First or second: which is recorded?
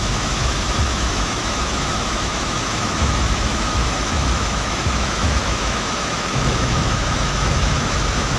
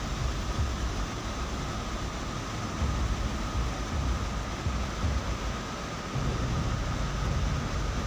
second